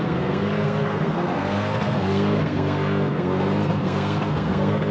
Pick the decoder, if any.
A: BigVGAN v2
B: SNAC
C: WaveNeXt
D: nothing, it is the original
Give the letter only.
B